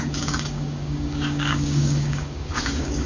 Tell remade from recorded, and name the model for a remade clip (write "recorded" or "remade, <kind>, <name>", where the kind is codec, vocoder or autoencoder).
remade, codec, DAC